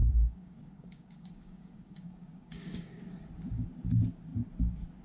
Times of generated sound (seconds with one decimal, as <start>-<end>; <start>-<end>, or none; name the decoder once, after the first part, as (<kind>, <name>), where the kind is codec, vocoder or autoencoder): 0.0-3.0 (codec, DAC)